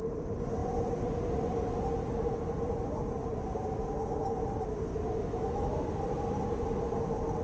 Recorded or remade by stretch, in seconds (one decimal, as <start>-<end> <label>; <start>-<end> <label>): 0.0-4.9 recorded; 4.9-5.9 remade; 5.9-7.4 recorded